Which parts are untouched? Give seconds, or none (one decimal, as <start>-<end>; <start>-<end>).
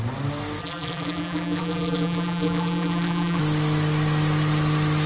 0.0-0.6; 3.4-5.1